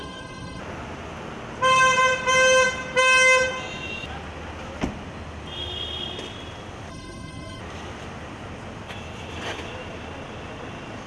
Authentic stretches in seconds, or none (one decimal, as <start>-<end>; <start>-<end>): 0.6-6.9; 7.6-11.1